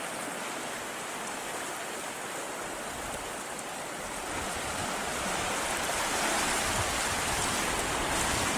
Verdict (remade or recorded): recorded